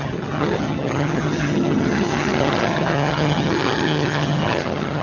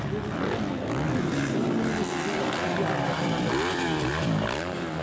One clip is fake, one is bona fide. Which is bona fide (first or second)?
second